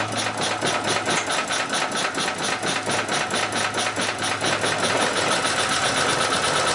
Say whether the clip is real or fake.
real